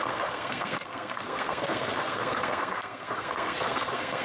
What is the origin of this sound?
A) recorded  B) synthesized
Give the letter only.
B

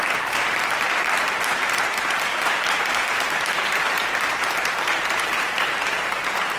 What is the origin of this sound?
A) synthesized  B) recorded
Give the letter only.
A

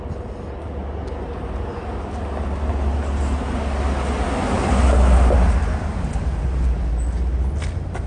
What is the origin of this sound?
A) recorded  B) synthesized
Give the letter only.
A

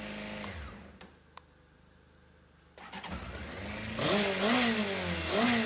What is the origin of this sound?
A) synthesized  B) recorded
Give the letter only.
B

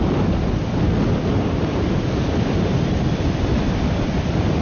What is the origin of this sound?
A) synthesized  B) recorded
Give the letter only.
B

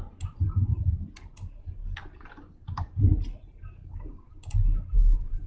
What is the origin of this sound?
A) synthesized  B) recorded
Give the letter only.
B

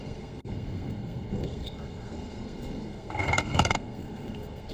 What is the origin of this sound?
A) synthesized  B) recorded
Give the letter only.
A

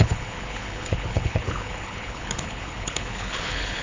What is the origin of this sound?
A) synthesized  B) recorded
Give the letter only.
A